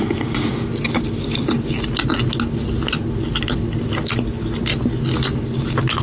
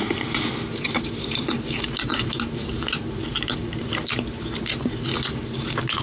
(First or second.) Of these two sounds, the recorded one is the first